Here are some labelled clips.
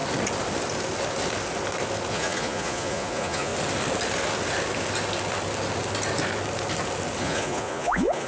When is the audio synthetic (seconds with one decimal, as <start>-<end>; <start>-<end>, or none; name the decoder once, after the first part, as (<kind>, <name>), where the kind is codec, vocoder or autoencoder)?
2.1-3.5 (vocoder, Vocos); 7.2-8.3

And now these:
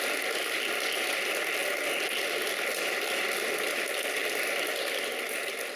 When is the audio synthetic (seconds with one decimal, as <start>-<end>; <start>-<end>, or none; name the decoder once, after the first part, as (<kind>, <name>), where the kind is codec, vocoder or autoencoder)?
none

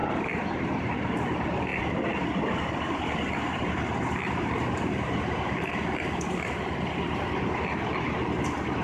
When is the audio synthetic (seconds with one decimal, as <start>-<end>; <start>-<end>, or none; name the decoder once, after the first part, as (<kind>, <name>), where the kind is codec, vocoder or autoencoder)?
0.0-0.6 (vocoder, BigVGAN v2); 1.7-5.2

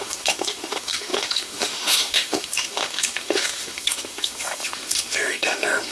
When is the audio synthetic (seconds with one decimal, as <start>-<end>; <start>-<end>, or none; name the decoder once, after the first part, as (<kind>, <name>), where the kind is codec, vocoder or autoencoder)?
0.0-5.9 (autoencoder, DAC-VAE)